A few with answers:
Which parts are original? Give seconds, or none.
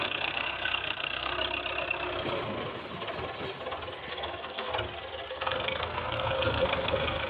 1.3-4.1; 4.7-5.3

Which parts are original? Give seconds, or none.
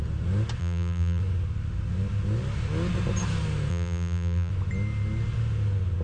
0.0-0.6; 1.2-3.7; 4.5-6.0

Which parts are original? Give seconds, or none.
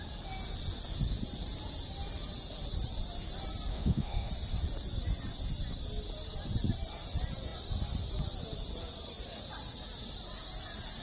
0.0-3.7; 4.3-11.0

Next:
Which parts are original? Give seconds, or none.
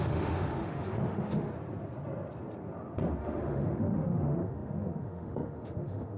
1.5-3.2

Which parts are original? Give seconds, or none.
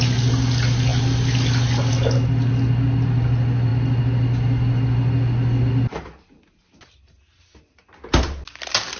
0.0-9.0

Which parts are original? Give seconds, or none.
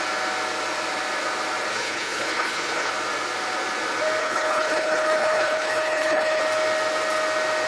0.0-1.7; 2.9-4.2; 6.4-7.7